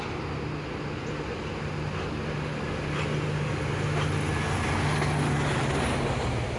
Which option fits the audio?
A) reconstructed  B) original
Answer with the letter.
B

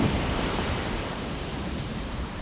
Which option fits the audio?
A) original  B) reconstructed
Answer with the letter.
B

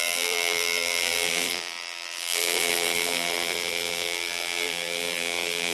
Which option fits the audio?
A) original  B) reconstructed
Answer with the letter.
B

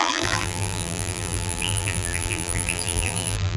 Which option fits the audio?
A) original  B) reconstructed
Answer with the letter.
B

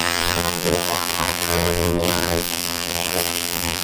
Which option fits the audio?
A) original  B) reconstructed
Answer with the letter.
B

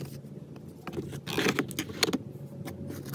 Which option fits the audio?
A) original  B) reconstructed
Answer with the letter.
A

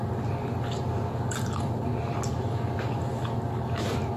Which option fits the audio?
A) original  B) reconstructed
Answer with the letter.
A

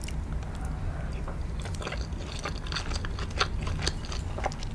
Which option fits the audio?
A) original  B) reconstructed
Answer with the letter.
A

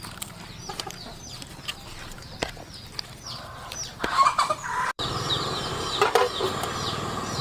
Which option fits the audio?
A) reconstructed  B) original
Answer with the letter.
A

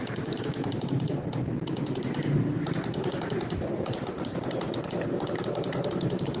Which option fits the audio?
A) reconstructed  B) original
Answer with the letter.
A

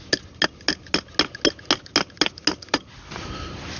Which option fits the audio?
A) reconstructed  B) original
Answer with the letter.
B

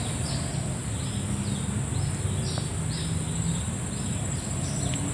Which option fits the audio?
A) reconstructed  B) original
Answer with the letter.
B